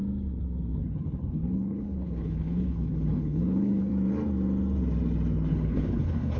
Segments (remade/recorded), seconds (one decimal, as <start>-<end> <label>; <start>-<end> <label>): 0.0-0.8 recorded; 0.8-3.9 remade; 3.9-5.5 recorded; 5.5-6.4 remade